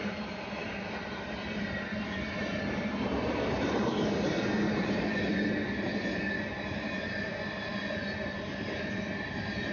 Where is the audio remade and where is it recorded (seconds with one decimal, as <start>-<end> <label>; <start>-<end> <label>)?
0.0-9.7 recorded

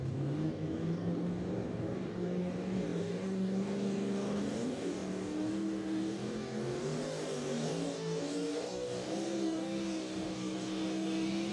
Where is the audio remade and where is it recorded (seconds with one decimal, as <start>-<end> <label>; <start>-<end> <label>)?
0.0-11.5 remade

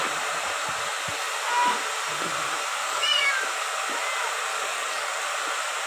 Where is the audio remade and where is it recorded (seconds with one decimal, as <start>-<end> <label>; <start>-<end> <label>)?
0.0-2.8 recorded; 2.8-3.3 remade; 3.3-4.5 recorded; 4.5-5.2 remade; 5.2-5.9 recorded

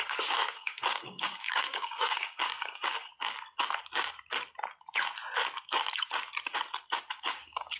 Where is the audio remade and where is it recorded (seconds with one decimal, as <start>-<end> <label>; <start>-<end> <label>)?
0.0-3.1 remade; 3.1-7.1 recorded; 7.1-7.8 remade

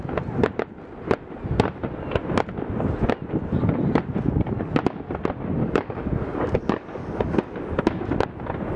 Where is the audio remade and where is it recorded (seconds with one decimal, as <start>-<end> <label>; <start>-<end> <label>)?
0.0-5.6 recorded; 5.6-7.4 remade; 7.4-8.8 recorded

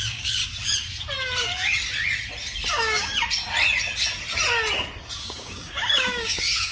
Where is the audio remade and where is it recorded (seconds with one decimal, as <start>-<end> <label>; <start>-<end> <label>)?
0.0-0.4 remade; 0.4-2.7 recorded; 2.7-3.1 remade; 3.1-5.2 recorded; 5.2-6.7 remade

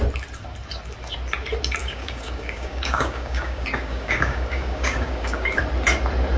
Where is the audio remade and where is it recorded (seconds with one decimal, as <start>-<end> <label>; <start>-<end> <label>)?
0.0-1.8 recorded; 1.8-5.6 remade; 5.6-6.4 recorded